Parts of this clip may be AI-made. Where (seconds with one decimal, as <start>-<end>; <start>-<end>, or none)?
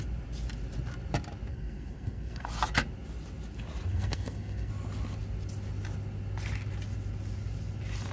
1.5-2.5; 3.9-4.7